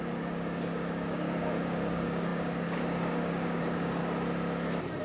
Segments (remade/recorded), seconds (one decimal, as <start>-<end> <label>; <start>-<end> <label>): 0.0-4.0 remade; 4.0-5.0 recorded